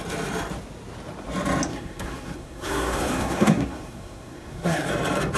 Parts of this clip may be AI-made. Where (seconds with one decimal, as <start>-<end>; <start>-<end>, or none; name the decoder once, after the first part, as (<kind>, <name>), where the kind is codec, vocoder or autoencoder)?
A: 1.7-4.9 (codec, SNAC)

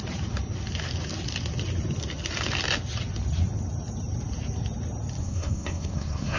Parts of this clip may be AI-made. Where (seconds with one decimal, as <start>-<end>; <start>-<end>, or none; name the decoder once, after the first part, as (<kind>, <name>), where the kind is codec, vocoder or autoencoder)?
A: 5.2-6.4 (codec, SNAC)